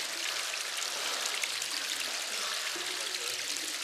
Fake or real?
real